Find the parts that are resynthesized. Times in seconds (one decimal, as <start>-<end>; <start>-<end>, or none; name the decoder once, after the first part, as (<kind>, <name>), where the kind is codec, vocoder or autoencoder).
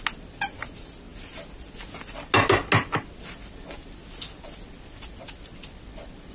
none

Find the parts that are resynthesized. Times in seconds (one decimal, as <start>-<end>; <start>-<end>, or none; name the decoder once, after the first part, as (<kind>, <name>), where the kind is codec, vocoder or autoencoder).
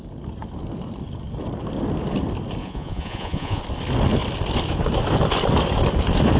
2.6-3.6 (vocoder, Vocos)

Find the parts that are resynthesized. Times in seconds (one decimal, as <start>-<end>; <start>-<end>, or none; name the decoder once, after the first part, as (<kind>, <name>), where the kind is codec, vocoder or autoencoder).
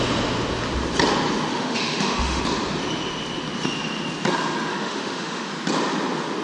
1.5-2.4 (autoencoder, DAC-VAE); 4.7-5.5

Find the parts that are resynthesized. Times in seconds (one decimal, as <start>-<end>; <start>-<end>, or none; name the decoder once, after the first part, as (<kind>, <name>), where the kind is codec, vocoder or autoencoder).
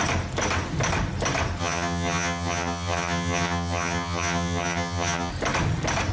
1.6-5.3 (vocoder, HiFi-GAN)